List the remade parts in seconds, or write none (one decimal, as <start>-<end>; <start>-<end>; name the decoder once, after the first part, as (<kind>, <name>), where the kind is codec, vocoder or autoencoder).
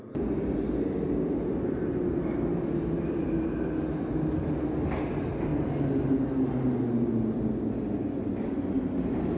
none